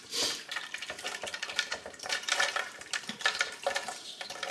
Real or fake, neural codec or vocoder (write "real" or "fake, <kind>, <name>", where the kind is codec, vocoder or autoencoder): fake, vocoder, BigVGAN v2